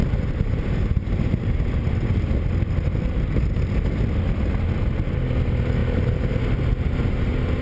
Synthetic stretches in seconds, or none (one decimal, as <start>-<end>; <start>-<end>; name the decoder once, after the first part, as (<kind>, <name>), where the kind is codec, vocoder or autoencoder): 0.0-1.8 (vocoder, BigVGAN v2); 5.8-6.4